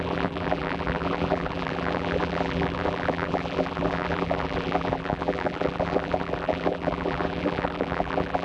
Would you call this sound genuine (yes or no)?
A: no